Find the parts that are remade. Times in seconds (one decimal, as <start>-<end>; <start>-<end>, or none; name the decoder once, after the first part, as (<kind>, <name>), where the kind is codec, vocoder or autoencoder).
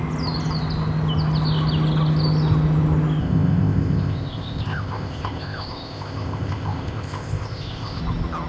3.2-8.0 (codec, ZipCodec)